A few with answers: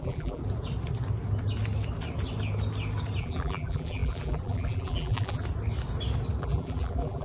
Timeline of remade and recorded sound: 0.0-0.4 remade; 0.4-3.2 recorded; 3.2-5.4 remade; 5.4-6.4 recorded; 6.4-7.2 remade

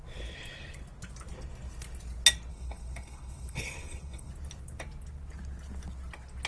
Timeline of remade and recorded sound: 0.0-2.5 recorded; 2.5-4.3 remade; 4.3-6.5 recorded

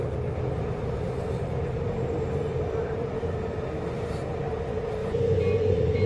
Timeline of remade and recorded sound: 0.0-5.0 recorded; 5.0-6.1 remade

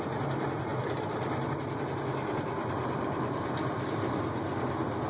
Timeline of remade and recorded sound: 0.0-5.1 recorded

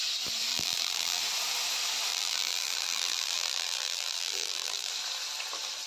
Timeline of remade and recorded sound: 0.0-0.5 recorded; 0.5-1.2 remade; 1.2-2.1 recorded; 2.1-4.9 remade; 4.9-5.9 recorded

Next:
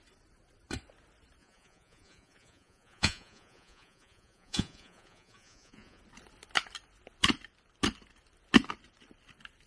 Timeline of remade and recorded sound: 0.0-1.4 recorded; 1.4-6.0 remade; 6.0-9.7 recorded

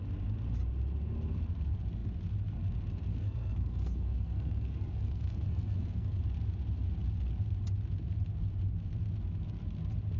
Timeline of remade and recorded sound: 0.0-3.1 recorded; 3.1-6.2 remade; 6.2-10.2 recorded

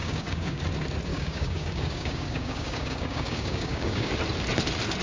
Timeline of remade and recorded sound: 0.0-0.6 remade; 0.6-1.1 recorded; 1.1-4.1 remade; 4.1-5.0 recorded